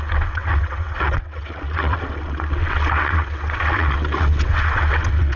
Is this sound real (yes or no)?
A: no